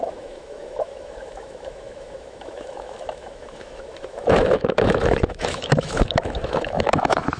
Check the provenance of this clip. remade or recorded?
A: remade